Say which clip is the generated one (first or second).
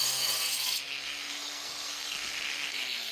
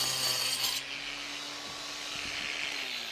first